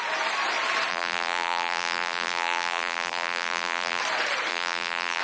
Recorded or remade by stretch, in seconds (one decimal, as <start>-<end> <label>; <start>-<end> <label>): 0.0-0.9 recorded; 0.9-4.0 remade; 4.0-4.5 recorded; 4.5-5.2 remade